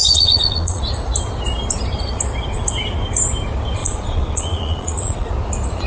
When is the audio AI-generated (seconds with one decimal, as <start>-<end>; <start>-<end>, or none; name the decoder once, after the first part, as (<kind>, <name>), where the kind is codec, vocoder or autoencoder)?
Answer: 0.0-0.8 (vocoder, Vocos); 3.8-5.3